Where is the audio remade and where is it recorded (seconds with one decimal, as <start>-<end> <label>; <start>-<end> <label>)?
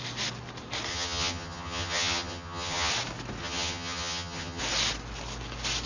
0.0-0.9 recorded; 0.9-2.9 remade; 2.9-3.4 recorded; 3.4-4.6 remade; 4.6-5.9 recorded